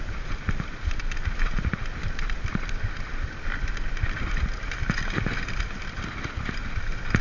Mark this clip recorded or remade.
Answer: recorded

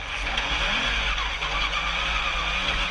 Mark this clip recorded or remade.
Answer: remade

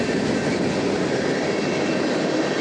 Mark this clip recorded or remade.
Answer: recorded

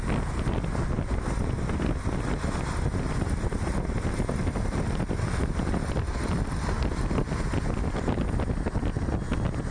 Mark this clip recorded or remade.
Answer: recorded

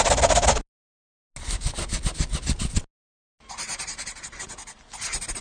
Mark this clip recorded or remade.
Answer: recorded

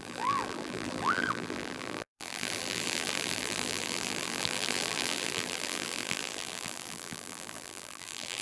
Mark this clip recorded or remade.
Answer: remade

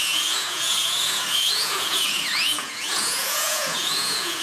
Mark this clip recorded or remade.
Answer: remade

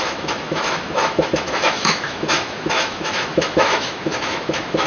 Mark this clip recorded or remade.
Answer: remade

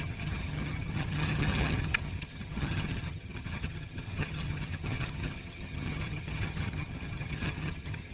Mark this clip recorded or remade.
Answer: remade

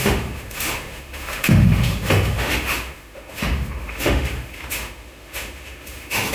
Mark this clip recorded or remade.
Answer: remade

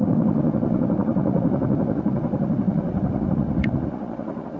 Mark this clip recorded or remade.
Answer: remade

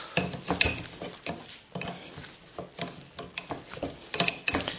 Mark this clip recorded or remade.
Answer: recorded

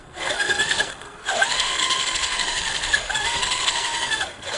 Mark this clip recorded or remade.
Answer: remade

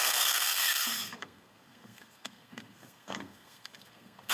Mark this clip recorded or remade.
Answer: remade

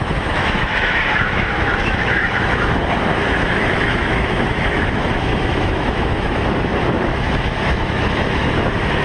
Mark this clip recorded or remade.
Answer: remade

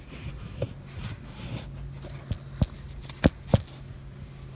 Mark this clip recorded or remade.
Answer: recorded